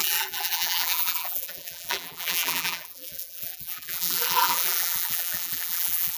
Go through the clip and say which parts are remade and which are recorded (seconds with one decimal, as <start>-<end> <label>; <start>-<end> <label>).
0.0-6.2 remade